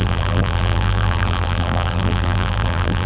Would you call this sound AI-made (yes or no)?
yes